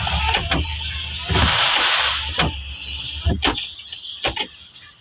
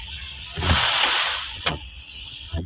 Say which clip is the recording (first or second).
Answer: first